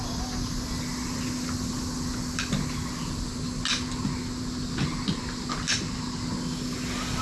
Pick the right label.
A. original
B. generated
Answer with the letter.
A